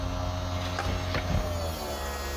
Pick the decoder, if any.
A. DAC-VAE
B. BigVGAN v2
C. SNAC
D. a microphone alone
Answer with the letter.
D